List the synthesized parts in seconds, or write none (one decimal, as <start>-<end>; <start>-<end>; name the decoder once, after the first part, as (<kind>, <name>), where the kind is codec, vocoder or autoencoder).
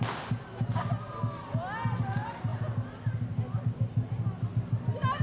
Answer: none